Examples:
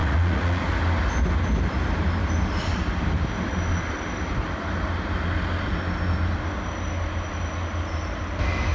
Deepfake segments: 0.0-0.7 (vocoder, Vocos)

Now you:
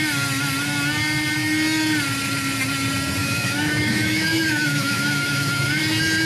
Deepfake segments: 3.2-5.8 (autoencoder, DAC-VAE)

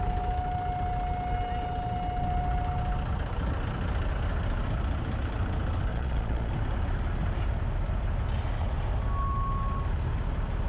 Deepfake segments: 5.9-6.5 (vocoder, Vocos)

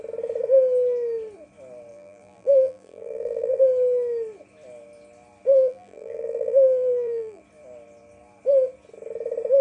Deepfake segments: 1.9-3.6 (vocoder, BigVGAN v2); 5.5-7.4

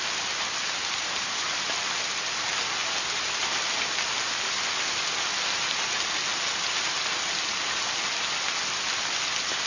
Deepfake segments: none